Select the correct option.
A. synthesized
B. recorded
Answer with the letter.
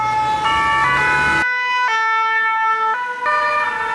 B